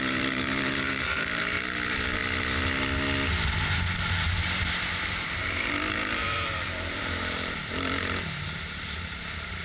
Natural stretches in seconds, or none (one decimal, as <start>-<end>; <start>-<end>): 2.2-5.0